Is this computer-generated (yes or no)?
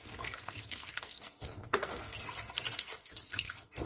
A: yes